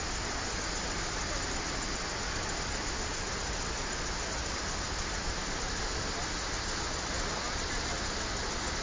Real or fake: real